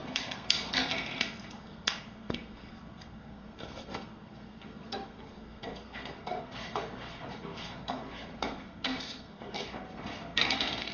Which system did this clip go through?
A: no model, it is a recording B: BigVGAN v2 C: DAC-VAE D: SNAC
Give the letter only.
D